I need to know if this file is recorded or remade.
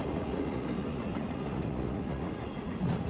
remade